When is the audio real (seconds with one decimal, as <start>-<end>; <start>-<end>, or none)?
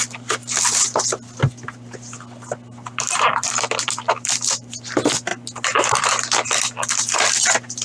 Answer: 0.0-7.8